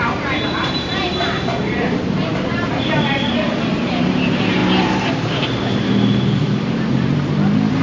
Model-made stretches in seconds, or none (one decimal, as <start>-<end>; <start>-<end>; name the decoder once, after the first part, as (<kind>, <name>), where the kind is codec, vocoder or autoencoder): 0.0-1.1 (vocoder, BigVGAN v2); 1.6-7.8